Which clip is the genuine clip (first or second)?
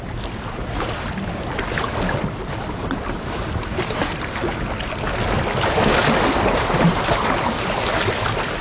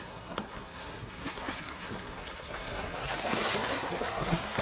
first